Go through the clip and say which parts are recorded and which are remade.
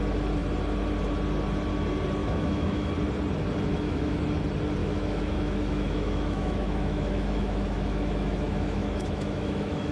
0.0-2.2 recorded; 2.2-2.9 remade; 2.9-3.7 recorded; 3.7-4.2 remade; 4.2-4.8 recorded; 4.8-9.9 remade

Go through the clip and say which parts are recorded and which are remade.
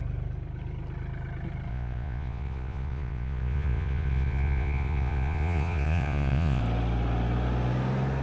0.0-1.7 recorded; 1.7-6.6 remade; 6.6-8.2 recorded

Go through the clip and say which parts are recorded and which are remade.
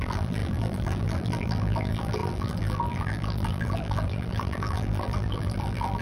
0.0-6.0 remade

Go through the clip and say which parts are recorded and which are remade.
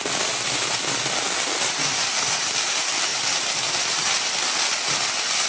0.0-5.5 recorded